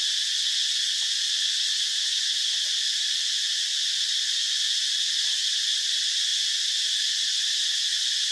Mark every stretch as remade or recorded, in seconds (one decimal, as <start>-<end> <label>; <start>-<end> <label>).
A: 0.0-8.3 recorded